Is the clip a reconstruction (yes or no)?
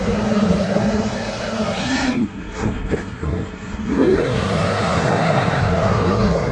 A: yes